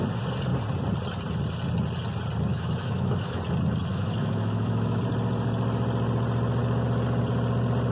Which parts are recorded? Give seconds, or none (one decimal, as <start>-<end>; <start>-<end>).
0.0-2.5; 3.4-3.9; 5.0-7.9